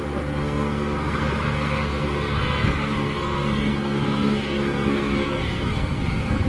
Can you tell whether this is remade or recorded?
remade